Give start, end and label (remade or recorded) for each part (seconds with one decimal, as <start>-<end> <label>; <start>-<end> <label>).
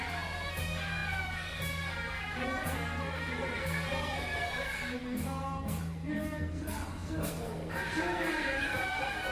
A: 0.0-9.3 remade